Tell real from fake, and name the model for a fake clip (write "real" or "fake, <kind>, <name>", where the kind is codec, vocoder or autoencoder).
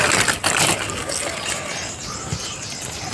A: real